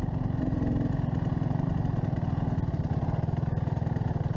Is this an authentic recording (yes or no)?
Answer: yes